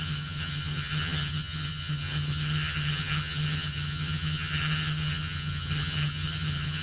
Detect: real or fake fake